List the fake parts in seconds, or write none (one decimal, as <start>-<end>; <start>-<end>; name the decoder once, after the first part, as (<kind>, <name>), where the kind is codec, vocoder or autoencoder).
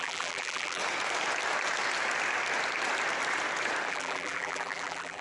0.0-0.8 (vocoder, BigVGAN v2); 3.9-5.2